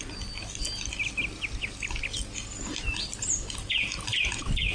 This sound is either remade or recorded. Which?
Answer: recorded